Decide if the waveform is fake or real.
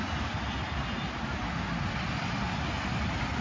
real